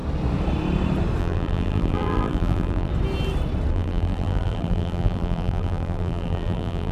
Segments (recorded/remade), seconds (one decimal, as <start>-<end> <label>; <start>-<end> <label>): 0.0-1.2 recorded; 1.2-2.9 remade; 2.9-3.7 recorded; 3.7-6.9 remade